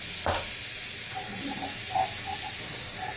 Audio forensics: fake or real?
real